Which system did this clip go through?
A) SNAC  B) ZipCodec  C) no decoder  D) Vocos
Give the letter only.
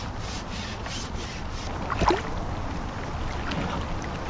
C